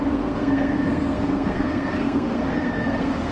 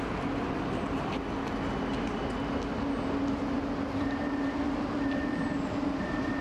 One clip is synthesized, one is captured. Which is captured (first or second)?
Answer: second